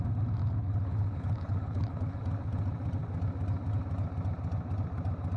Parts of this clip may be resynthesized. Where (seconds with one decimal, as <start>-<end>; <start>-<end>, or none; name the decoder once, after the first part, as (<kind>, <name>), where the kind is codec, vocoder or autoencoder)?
0.4-2.2 (codec, HILCodec)